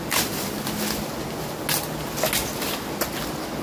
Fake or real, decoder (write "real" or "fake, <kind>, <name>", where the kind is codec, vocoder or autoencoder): real